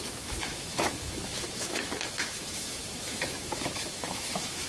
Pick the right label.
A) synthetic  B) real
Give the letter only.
A